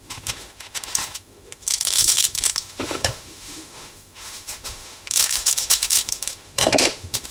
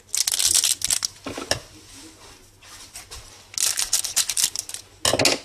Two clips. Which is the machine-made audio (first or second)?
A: first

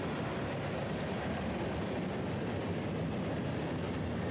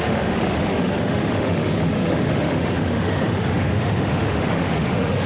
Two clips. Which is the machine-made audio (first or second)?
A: second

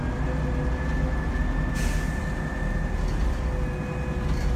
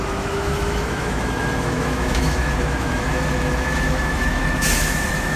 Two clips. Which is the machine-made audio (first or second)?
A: second